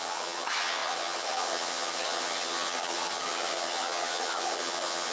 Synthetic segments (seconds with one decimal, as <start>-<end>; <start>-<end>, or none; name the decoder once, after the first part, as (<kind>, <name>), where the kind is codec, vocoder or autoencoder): 0.0-5.1 (vocoder, HiFi-GAN)